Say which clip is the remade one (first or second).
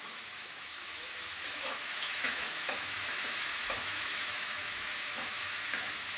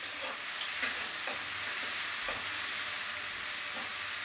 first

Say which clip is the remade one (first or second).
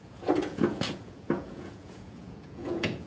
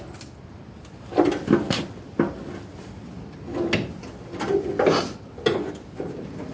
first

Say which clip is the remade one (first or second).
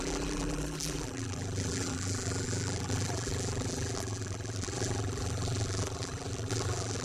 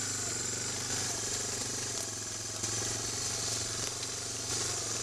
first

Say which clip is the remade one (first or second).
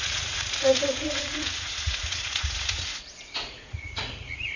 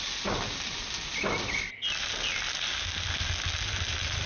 first